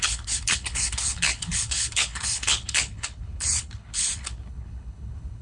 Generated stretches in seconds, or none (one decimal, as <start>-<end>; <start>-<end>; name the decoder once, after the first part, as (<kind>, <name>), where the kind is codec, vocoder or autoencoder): 0.0-5.4 (codec, HILCodec)